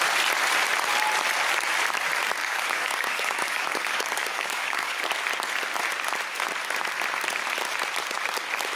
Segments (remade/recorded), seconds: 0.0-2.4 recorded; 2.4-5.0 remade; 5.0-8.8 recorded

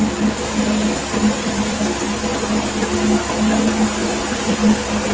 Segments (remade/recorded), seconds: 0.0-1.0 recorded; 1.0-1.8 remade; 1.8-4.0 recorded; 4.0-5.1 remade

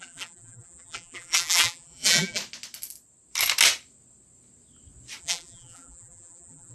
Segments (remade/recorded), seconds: 0.0-2.4 remade; 2.4-5.2 recorded; 5.2-6.7 remade

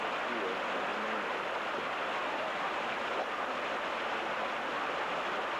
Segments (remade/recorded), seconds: 0.0-5.6 recorded

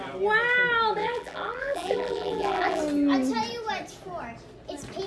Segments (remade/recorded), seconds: 0.0-1.0 recorded; 1.0-2.8 remade; 2.8-5.1 recorded

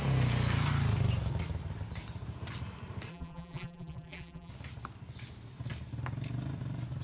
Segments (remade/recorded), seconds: 0.0-3.1 recorded; 3.1-4.5 remade; 4.5-7.0 recorded

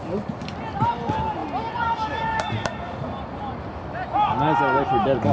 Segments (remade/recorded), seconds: 0.0-5.3 recorded

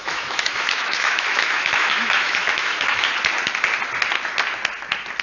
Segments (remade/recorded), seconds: 0.0-3.1 remade; 3.1-5.2 recorded